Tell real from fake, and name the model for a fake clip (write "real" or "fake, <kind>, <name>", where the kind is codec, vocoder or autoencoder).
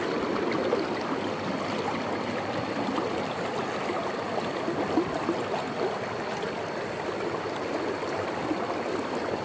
real